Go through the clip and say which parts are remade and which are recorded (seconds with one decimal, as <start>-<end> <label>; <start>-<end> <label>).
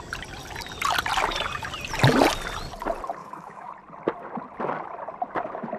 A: 0.0-3.2 recorded; 3.2-3.7 remade; 3.7-5.8 recorded